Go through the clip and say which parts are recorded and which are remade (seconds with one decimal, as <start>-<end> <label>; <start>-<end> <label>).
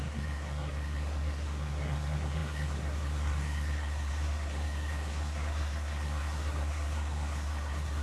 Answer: 0.0-8.0 remade